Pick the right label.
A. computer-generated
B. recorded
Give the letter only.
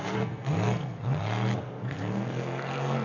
A